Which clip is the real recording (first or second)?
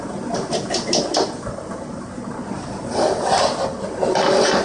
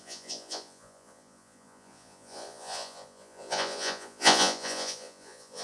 first